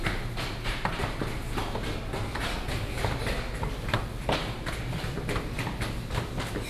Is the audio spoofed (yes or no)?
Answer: no